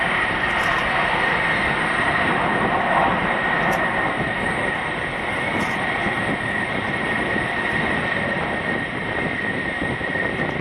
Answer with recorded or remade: remade